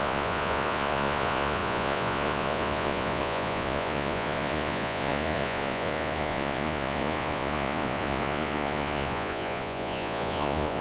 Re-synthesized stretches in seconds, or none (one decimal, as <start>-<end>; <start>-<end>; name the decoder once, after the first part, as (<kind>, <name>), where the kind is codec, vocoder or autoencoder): 0.0-10.8 (vocoder, Vocos)

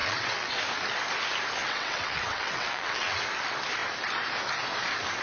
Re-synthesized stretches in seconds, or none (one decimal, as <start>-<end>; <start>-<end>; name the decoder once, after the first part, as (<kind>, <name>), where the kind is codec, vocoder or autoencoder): 0.0-0.6 (vocoder, WaveNeXt); 1.6-3.2

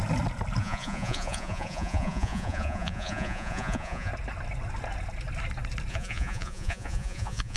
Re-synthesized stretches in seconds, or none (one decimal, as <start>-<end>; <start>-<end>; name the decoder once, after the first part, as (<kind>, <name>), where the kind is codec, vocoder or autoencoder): 0.6-4.1 (vocoder, Vocos); 5.9-7.6

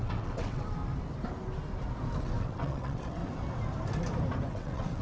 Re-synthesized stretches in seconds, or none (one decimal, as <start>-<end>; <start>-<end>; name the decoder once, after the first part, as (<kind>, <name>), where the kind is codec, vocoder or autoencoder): 0.0-0.8 (vocoder, WaveNeXt); 2.2-3.2; 4.5-5.0

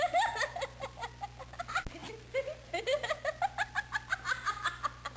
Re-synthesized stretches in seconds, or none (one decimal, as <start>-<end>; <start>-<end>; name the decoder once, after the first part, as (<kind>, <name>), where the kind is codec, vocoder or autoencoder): none

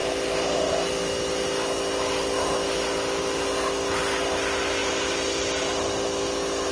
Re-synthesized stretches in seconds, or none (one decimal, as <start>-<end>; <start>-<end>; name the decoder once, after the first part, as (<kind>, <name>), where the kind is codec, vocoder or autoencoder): none

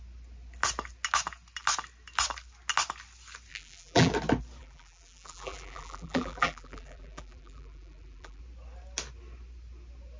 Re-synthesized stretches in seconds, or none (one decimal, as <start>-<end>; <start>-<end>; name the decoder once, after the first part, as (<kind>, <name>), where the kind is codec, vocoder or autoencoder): 3.5-4.1 (vocoder, BigVGAN v2); 4.6-8.4